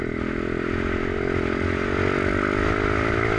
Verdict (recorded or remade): recorded